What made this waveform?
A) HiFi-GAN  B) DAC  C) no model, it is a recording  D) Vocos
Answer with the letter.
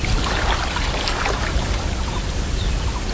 C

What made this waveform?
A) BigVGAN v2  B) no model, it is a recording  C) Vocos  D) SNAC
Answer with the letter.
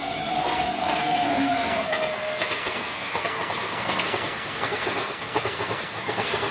D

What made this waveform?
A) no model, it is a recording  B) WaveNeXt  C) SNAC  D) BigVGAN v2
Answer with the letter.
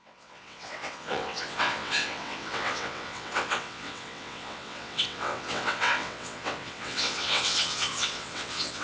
B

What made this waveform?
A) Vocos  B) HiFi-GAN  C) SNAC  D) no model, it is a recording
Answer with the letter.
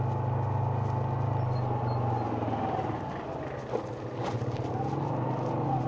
D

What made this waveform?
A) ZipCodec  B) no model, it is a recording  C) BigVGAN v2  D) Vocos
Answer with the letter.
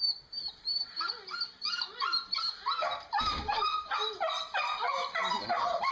B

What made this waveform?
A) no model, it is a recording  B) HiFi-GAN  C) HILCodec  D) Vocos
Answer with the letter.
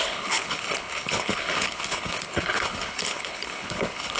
C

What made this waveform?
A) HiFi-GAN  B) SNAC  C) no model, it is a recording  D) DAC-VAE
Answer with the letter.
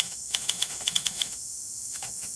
D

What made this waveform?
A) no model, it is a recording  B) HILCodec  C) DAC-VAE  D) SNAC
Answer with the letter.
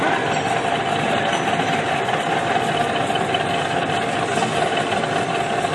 A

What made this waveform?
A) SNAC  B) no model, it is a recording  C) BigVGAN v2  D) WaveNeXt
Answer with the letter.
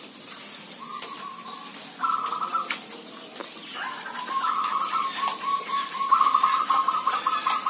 B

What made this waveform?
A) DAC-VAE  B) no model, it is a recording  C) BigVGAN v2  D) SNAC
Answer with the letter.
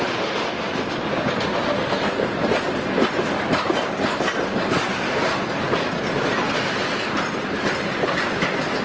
B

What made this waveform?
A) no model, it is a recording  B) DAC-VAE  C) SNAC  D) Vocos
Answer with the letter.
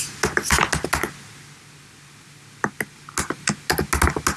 A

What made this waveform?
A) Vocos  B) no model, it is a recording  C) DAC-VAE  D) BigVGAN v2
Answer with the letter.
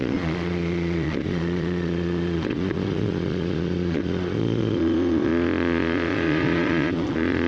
A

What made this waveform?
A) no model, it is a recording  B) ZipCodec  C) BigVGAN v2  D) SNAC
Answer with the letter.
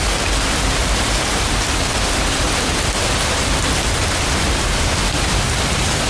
C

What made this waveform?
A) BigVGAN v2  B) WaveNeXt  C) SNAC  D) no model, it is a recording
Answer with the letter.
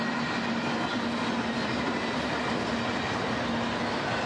D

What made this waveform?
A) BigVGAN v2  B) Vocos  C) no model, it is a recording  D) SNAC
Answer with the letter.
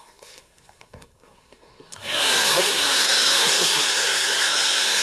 D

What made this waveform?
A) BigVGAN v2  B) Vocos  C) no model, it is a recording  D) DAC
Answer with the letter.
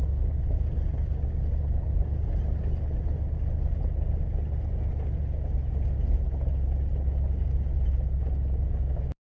C